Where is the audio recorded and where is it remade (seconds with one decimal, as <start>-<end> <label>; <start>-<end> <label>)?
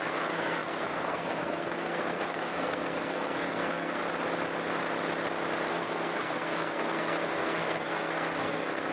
0.0-4.0 remade; 4.0-5.7 recorded; 5.7-8.9 remade